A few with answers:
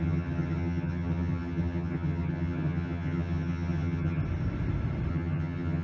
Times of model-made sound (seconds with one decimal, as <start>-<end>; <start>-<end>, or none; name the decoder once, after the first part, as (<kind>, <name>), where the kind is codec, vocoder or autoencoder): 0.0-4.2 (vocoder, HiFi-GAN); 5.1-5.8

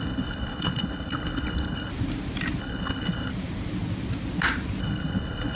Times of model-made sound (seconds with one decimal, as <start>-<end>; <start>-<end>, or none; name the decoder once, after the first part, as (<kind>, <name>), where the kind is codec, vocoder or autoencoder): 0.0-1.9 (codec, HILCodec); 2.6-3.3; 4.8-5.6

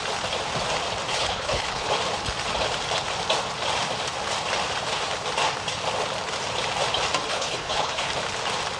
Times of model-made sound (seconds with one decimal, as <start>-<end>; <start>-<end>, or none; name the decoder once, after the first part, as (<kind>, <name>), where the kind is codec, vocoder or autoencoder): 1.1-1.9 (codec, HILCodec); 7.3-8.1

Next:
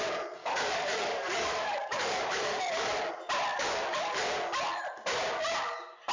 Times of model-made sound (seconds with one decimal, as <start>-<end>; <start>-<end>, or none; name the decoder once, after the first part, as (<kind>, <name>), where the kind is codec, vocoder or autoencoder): 0.4-3.1 (codec, DAC); 3.5-4.2